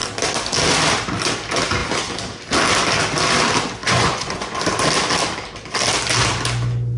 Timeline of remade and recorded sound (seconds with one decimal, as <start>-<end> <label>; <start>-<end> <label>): 0.0-3.8 recorded; 3.8-4.6 remade; 4.6-7.0 recorded

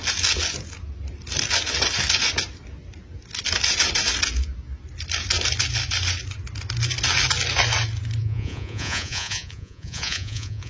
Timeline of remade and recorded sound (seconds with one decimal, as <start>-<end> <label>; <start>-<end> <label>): 0.0-8.2 recorded; 8.2-10.7 remade

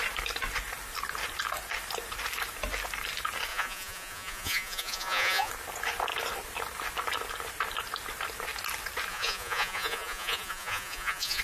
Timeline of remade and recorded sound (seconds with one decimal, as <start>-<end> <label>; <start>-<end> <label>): 0.0-3.5 recorded; 3.5-5.5 remade; 5.5-9.1 recorded; 9.1-11.4 remade

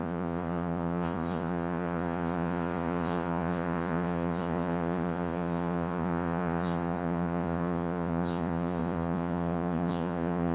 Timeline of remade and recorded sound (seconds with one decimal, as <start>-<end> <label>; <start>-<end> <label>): 0.0-10.5 remade

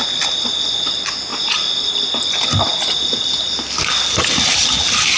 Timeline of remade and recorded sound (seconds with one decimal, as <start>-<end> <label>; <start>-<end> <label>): 0.0-1.3 recorded; 1.3-1.9 remade; 1.9-5.2 recorded